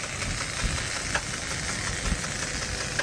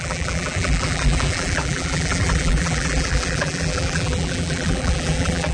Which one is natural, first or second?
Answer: first